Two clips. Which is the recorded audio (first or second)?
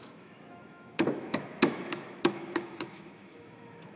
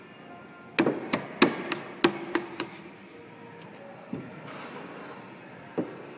second